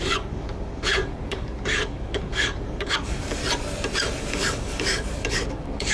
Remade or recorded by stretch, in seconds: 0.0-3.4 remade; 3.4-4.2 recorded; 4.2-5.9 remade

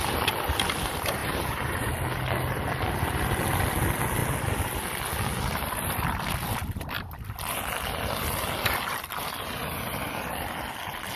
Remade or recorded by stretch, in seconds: 0.0-1.2 recorded; 1.2-1.9 remade; 1.9-11.2 recorded

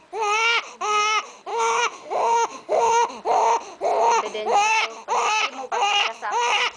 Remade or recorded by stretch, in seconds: 0.0-1.5 recorded; 1.5-3.1 remade; 3.1-6.8 recorded

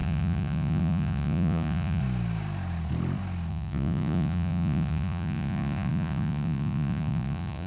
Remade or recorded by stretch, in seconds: 0.0-2.0 remade; 2.0-3.5 recorded; 3.5-7.7 remade

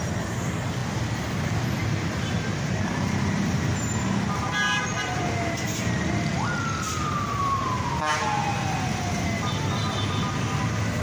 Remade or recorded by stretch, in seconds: 0.0-11.0 recorded